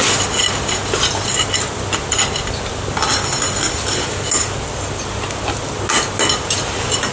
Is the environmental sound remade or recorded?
recorded